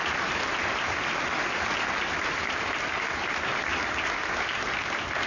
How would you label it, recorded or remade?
recorded